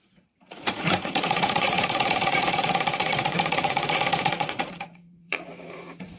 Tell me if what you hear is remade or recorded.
remade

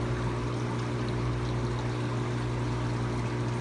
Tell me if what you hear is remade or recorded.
recorded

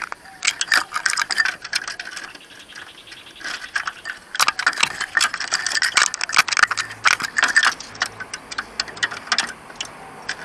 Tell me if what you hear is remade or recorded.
recorded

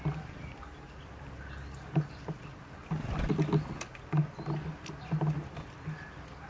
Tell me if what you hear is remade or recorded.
recorded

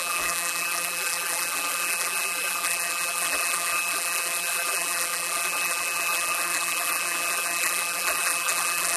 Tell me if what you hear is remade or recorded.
remade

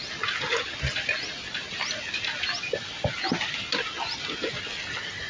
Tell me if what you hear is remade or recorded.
recorded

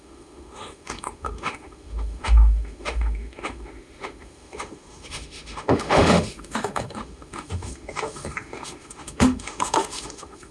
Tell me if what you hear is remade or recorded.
remade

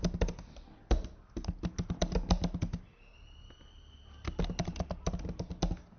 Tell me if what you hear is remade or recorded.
recorded